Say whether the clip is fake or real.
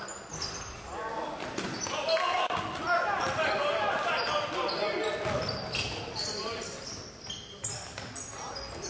real